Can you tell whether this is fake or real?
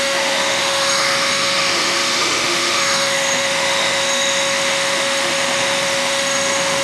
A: fake